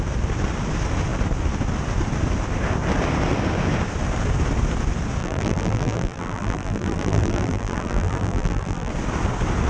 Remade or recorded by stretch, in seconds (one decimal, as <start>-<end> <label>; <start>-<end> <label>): 0.0-5.2 recorded; 5.2-8.9 remade; 8.9-9.7 recorded